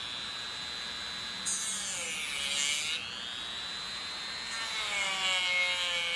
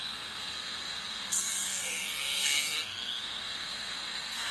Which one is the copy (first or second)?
second